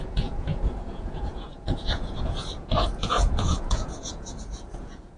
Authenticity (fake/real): fake